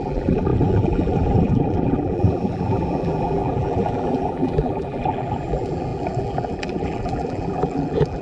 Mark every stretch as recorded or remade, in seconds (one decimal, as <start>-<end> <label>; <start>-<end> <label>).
0.0-8.2 remade